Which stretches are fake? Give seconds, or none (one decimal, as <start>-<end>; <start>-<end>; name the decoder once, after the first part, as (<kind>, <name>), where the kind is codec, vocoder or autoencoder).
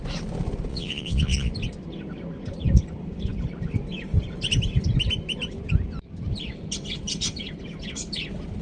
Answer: 0.7-1.5 (vocoder, Vocos)